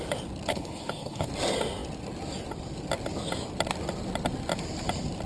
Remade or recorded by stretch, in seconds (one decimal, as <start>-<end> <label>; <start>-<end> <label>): 0.0-0.5 recorded; 0.5-1.3 remade; 1.3-5.3 recorded